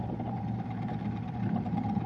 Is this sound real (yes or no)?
no